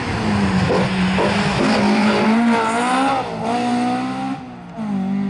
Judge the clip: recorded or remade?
recorded